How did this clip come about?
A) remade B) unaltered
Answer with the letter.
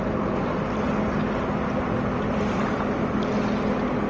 B